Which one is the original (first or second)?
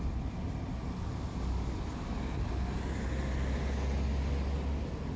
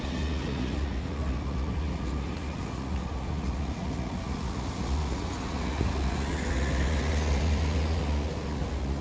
first